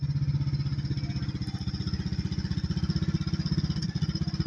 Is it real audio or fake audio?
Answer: real